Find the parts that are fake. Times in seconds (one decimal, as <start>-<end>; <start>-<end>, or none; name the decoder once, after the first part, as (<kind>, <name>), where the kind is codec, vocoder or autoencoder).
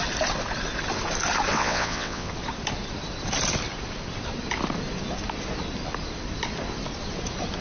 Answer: 1.5-2.3 (vocoder, WaveNeXt)